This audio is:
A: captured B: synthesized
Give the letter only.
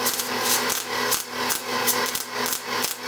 A